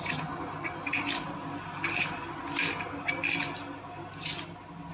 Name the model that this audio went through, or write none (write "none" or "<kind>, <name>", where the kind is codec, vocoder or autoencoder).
none